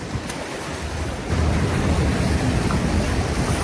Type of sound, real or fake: real